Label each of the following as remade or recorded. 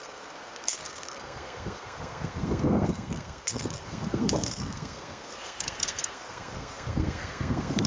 remade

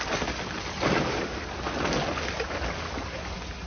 recorded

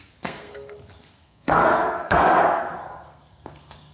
remade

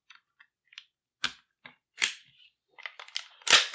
recorded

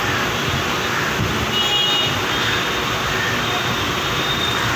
recorded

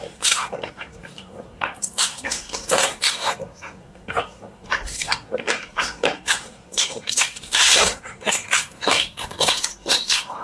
remade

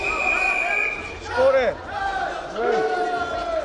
recorded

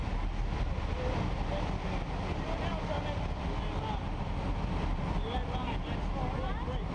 recorded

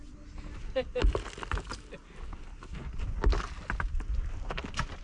recorded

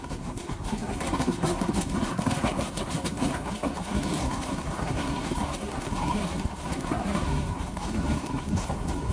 remade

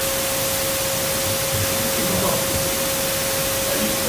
recorded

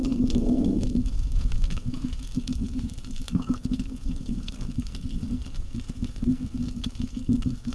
remade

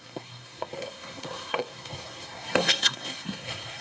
remade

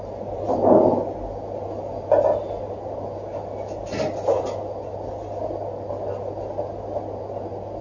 recorded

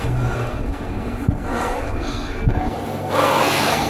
remade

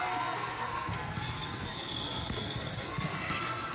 remade